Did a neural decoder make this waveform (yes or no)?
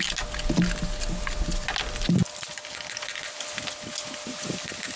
no